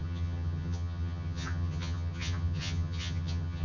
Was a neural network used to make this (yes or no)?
yes